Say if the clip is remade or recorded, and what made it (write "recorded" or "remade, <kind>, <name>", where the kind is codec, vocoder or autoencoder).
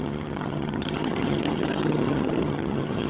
remade, vocoder, HiFi-GAN